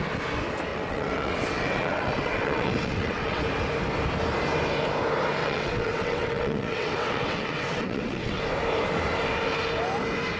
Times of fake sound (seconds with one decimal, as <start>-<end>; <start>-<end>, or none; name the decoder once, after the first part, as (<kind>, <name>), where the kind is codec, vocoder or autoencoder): 0.7-3.4 (vocoder, WaveNeXt); 5.4-8.4